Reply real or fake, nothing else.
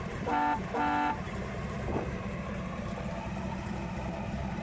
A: fake